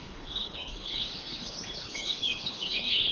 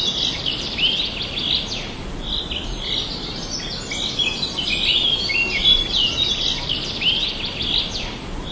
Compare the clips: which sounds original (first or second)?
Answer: second